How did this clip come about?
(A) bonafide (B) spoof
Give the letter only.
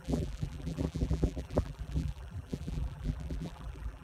B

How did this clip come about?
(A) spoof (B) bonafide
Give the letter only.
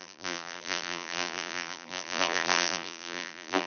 A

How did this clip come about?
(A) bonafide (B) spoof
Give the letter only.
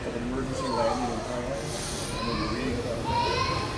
A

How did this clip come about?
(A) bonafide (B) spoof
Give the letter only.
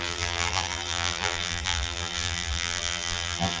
B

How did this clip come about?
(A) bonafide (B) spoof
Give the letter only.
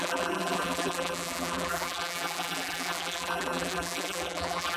B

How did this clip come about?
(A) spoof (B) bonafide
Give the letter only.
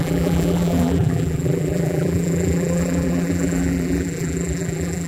A